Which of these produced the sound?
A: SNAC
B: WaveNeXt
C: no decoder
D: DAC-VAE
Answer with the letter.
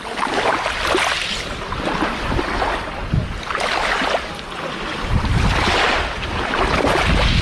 C